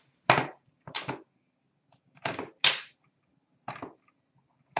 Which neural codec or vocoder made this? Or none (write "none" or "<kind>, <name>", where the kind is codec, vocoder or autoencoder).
none